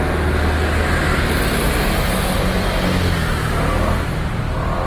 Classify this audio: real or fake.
real